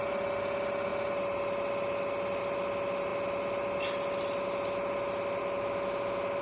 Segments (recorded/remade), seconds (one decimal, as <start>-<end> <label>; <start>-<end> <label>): 0.0-6.4 recorded